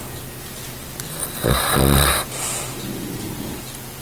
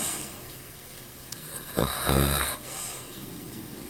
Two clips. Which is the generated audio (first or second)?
second